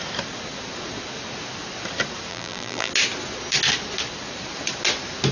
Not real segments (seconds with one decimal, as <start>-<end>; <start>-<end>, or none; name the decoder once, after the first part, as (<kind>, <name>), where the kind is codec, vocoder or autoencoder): 2.3-2.9 (vocoder, BigVGAN v2)